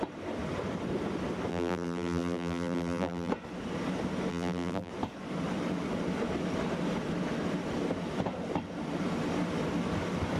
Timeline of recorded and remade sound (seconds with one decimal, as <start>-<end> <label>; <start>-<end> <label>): 0.0-1.5 recorded; 1.5-3.3 remade; 3.3-4.3 recorded; 4.3-4.9 remade; 4.9-10.4 recorded